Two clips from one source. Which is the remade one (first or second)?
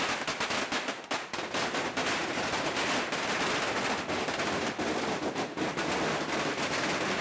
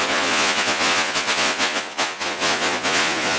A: second